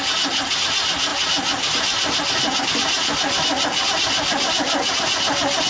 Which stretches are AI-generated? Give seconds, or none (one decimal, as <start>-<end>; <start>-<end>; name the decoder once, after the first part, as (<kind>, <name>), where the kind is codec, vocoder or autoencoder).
none